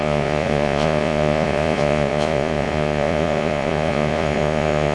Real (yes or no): no